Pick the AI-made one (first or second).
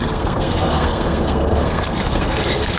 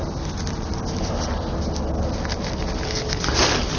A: first